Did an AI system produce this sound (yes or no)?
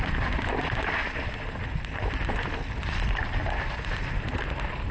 no